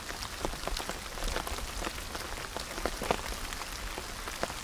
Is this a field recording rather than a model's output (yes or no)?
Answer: yes